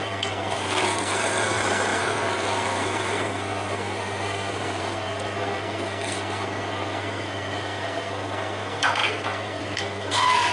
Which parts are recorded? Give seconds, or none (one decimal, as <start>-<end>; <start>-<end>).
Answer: none